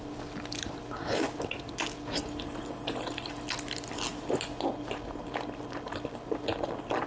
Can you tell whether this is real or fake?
real